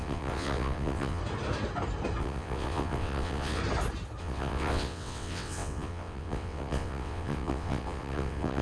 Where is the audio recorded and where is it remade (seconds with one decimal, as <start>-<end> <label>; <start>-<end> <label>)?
0.0-1.2 remade; 1.2-2.2 recorded; 2.2-3.6 remade; 3.6-4.2 recorded; 4.2-8.6 remade